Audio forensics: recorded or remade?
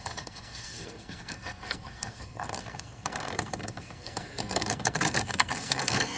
remade